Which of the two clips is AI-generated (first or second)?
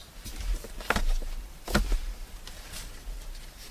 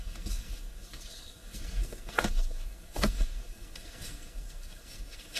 second